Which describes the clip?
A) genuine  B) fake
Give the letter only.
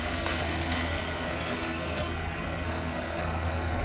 B